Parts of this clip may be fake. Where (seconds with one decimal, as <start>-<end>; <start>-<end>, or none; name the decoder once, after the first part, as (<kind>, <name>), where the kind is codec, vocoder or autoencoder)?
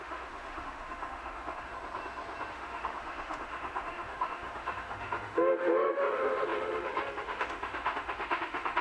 0.0-1.7 (autoencoder, DAC-VAE); 2.5-8.8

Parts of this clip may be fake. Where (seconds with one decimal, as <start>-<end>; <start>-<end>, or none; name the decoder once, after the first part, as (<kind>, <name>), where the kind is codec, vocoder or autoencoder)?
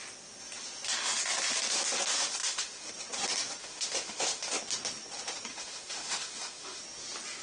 2.4-2.9 (autoencoder, DAC-VAE); 3.6-4.5; 5.5-6.8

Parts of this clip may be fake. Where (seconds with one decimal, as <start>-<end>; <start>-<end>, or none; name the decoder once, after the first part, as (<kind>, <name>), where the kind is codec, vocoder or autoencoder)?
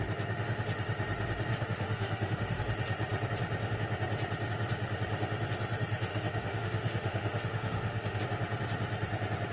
1.5-2.6 (autoencoder, DAC-VAE); 6.1-8.2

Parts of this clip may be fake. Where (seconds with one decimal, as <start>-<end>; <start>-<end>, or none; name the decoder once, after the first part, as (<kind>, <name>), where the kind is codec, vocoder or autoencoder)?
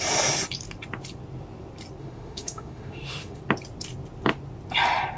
2.0-3.4 (autoencoder, DAC-VAE)